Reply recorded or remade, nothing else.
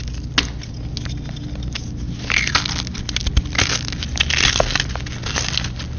recorded